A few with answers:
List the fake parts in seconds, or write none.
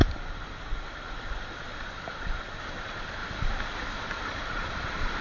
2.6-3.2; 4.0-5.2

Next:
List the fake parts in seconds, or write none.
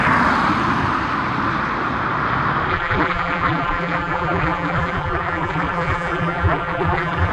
2.7-7.3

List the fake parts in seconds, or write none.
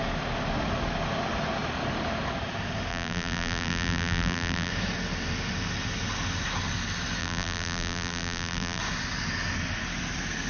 2.9-4.7; 7.2-8.8